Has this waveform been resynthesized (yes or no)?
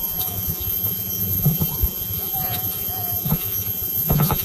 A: yes